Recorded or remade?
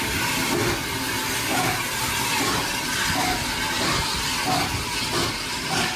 recorded